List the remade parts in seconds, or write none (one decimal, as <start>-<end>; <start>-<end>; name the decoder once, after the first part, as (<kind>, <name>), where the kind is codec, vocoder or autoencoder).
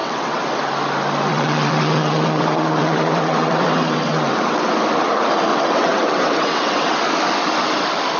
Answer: 0.0-0.5 (vocoder, WaveNeXt); 1.3-4.7; 5.5-7.0